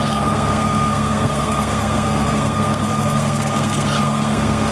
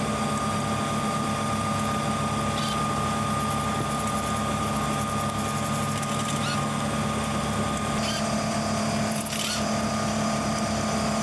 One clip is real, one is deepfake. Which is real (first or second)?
second